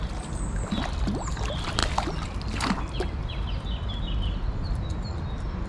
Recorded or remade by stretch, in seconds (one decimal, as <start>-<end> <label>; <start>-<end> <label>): 0.0-5.7 recorded